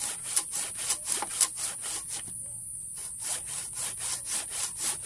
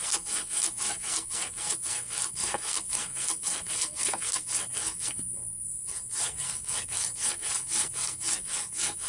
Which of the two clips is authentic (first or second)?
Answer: first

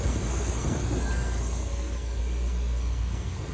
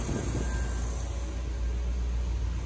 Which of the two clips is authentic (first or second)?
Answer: second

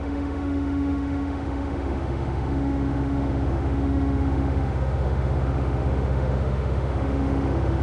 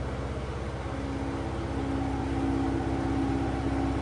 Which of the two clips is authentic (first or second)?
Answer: second